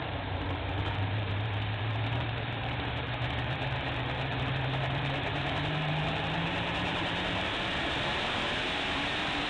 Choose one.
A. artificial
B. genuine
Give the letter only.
A